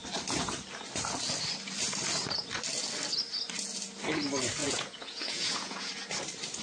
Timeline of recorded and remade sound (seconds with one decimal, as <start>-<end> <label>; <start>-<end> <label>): 0.0-4.6 recorded; 4.6-5.9 remade; 5.9-6.6 recorded